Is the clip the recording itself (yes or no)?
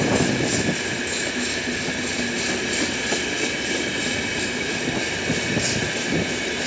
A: yes